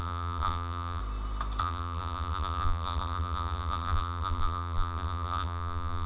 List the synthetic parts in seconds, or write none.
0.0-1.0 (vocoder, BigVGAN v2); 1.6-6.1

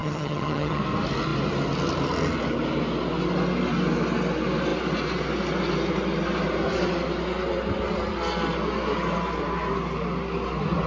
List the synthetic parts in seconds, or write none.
0.0-0.8 (vocoder, HiFi-GAN)

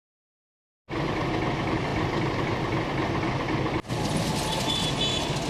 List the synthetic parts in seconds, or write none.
none